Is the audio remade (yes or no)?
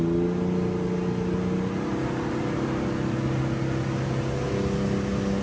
no